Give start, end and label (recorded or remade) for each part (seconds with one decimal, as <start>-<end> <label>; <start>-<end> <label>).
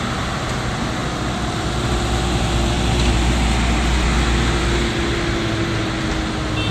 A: 0.0-1.0 recorded; 1.0-2.4 remade; 2.4-6.7 recorded